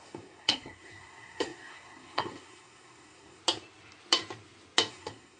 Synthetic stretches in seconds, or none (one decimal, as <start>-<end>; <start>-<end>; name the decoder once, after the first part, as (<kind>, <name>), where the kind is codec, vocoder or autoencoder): 0.0-3.4 (codec, SNAC); 4.9-5.4